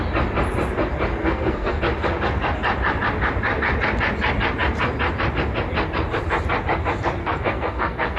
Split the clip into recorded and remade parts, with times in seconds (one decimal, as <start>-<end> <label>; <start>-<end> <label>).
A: 0.0-1.2 recorded; 1.2-1.8 remade; 1.8-7.2 recorded; 7.2-8.2 remade